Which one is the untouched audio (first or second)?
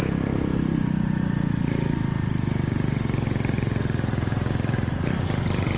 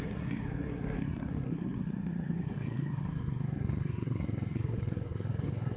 first